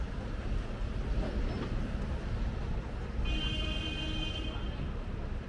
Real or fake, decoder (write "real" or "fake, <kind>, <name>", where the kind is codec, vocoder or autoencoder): real